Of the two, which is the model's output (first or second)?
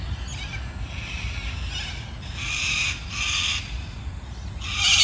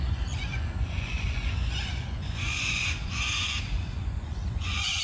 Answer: second